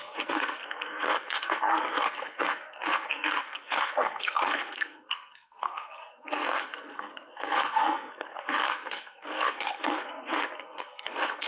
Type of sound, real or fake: fake